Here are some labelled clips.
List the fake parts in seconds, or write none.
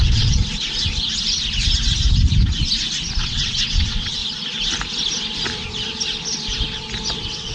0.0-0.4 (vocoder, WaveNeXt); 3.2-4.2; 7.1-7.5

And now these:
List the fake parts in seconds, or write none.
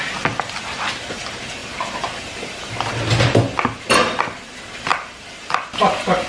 none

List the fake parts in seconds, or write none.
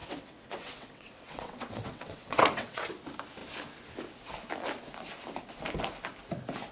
0.0-2.9 (vocoder, WaveNeXt)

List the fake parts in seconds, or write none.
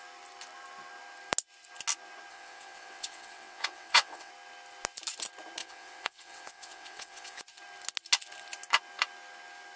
2.3-4.3 (vocoder, WaveNeXt); 5.6-7.4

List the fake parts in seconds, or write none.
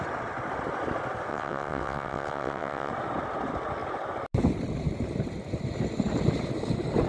1.3-2.9 (vocoder, WaveNeXt)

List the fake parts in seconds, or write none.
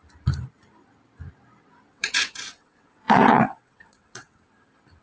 1.9-4.5 (vocoder, WaveNeXt)